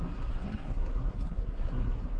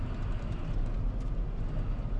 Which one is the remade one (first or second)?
first